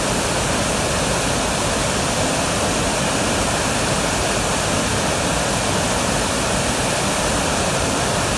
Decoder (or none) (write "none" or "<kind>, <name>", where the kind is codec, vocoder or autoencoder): none